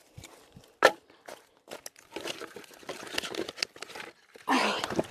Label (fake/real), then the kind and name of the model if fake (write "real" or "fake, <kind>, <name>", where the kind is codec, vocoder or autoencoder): real